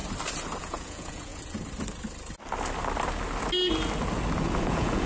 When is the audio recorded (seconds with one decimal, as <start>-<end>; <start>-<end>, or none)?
0.0-0.6; 1.3-4.4